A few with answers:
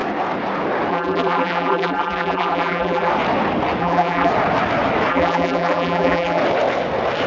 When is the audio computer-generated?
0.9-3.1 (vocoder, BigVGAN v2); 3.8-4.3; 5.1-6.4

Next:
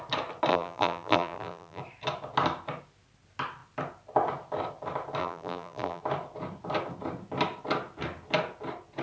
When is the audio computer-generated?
0.5-1.8 (vocoder, BigVGAN v2); 5.2-6.0

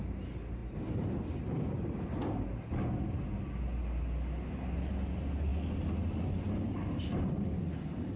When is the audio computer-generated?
none

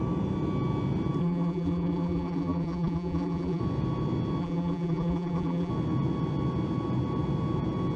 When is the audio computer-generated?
1.2-3.6 (vocoder, BigVGAN v2); 4.4-5.7

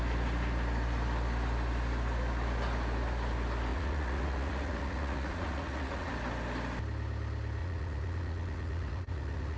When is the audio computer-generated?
3.7-6.1 (vocoder, Vocos); 7.6-9.6

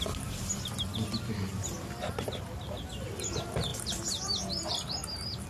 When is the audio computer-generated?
none

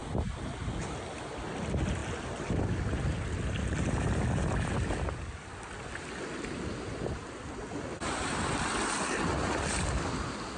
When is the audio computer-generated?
none

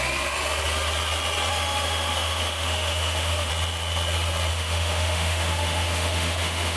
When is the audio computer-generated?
1.5-3.5 (autoencoder, DAC-VAE); 4.5-6.8